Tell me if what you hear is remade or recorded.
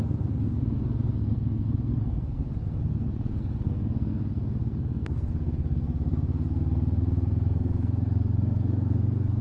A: remade